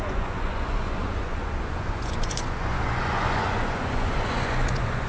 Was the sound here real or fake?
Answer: fake